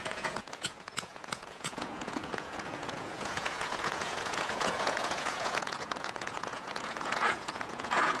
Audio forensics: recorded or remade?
remade